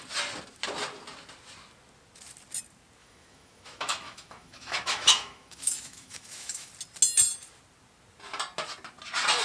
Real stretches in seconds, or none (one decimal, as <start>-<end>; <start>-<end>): 0.0-3.0; 6.7-9.4